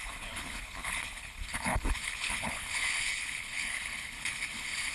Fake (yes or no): yes